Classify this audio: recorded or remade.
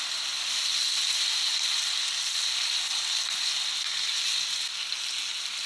recorded